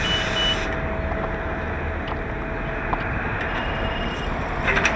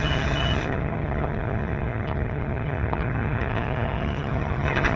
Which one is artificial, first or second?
second